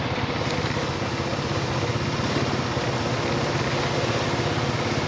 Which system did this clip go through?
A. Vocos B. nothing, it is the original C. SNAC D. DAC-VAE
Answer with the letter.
B